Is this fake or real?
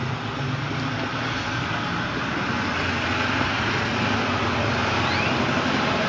real